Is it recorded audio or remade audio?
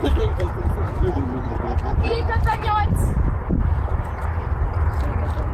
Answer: recorded